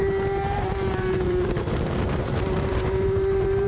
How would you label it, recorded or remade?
remade